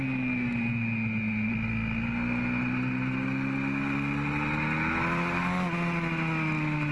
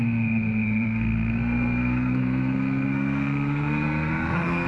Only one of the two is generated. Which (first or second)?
second